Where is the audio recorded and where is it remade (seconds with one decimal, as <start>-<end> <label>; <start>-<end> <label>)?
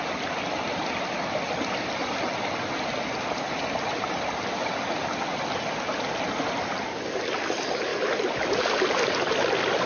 0.0-7.9 recorded; 7.9-9.1 remade; 9.1-9.9 recorded